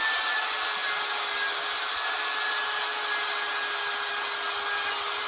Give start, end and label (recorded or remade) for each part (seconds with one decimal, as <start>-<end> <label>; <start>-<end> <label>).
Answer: 0.0-5.3 recorded